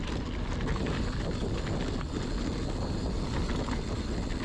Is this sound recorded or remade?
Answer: recorded